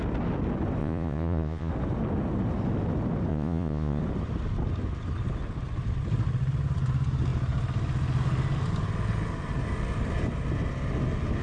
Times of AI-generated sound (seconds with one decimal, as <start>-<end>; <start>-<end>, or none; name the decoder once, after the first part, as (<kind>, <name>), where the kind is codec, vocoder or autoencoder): 0.8-1.7 (vocoder, Vocos); 3.3-4.0